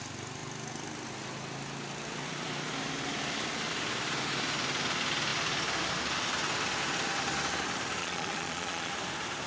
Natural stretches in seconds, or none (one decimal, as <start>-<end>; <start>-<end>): 0.0-8.0; 8.9-9.5